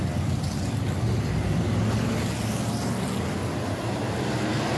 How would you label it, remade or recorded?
recorded